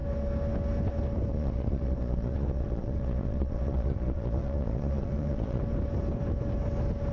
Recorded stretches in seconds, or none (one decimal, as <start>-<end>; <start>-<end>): 0.0-1.3; 5.6-7.1

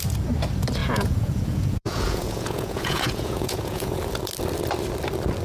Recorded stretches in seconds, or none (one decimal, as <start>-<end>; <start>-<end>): 0.0-0.8; 4.0-5.4

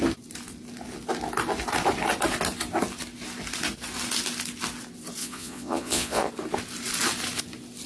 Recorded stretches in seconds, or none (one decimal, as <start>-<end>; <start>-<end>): 0.0-5.2; 6.3-7.9

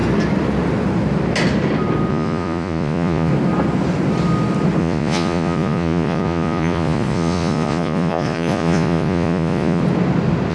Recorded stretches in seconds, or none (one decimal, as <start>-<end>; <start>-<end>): 0.0-2.1; 3.3-4.8; 9.8-10.5

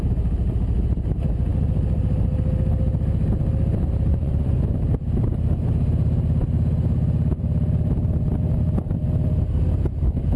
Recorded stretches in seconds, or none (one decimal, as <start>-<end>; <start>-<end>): 0.0-4.1; 4.6-10.4

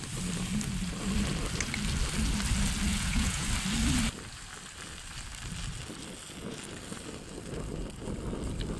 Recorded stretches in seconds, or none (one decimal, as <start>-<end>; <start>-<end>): 0.0-2.9; 3.5-8.8